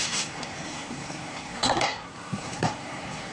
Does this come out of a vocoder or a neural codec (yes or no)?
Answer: yes